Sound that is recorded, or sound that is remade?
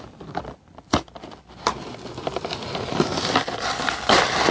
remade